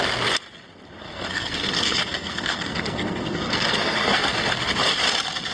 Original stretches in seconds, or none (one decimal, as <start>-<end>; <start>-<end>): 0.0-1.0; 4.3-5.5